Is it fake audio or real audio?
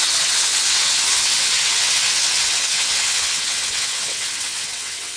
fake